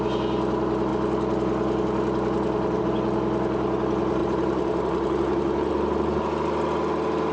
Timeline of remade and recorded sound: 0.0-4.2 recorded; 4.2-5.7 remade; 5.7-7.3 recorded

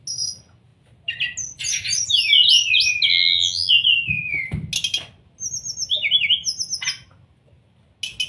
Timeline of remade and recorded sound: 0.0-3.1 recorded; 3.1-3.7 remade; 3.7-8.3 recorded

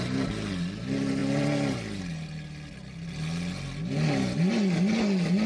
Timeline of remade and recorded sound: 0.0-5.5 recorded